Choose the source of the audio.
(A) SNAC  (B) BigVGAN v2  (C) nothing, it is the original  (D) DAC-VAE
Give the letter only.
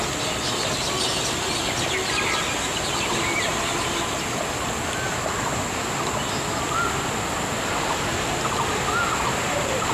C